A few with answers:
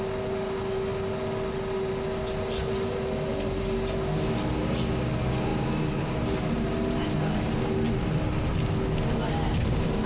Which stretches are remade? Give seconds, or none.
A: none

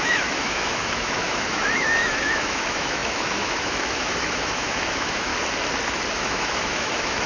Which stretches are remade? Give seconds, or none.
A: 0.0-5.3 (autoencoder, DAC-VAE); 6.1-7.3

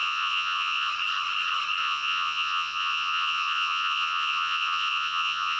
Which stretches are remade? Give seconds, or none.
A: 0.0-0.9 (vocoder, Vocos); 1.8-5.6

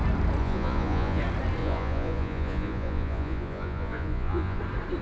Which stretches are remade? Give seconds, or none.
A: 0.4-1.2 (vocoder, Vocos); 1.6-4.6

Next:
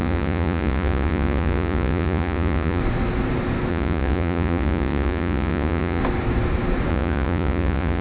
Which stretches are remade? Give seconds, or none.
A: 0.0-2.8 (vocoder, Vocos); 3.7-6.0; 6.9-8.0